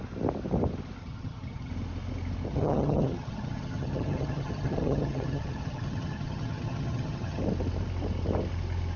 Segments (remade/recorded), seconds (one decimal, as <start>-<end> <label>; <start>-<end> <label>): 0.0-1.0 recorded; 1.0-1.7 remade; 1.7-2.5 recorded; 2.5-7.4 remade; 7.4-9.0 recorded

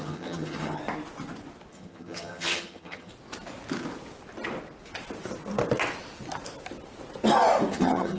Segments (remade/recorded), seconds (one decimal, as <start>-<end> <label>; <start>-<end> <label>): 0.0-0.8 remade; 0.8-1.7 recorded; 1.7-3.1 remade; 3.1-7.7 recorded; 7.7-8.2 remade

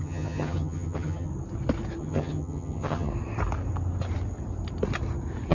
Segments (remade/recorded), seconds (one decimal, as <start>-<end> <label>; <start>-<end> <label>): 0.0-1.3 remade; 1.3-2.0 recorded; 2.0-3.1 remade; 3.1-5.5 recorded

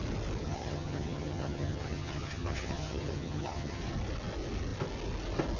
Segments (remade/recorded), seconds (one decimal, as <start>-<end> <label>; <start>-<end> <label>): 0.0-0.4 recorded; 0.4-3.8 remade; 3.8-5.6 recorded

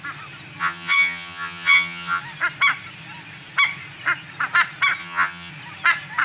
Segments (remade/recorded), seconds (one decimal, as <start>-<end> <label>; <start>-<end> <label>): 0.0-0.6 recorded; 0.6-2.2 remade; 2.2-5.0 recorded; 5.0-5.5 remade; 5.5-6.2 recorded

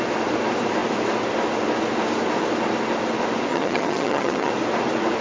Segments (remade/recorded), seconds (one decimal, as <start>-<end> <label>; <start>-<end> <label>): 0.0-3.5 recorded; 3.5-4.5 remade; 4.5-5.2 recorded

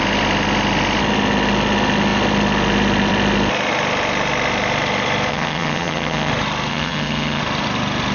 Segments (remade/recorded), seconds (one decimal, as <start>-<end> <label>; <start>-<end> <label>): 0.0-5.3 recorded; 5.3-6.3 remade; 6.3-6.7 recorded; 6.7-7.4 remade; 7.4-8.1 recorded